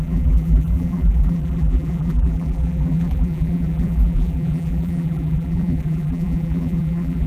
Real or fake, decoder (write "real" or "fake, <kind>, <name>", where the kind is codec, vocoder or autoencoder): fake, vocoder, BigVGAN v2